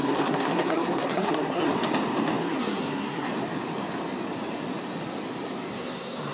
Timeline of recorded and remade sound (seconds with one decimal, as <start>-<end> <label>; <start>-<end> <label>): 0.0-1.7 remade; 1.7-2.4 recorded; 2.4-3.3 remade; 3.3-5.7 recorded; 5.7-6.3 remade